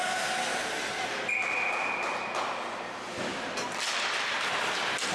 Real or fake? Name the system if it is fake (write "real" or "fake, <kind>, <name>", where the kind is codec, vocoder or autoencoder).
real